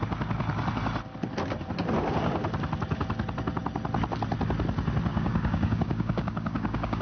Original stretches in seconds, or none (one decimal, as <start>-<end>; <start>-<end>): 0.0-5.1